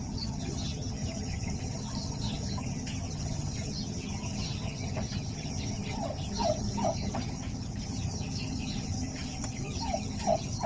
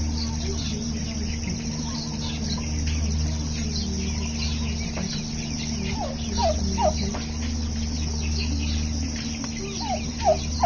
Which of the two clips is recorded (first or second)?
second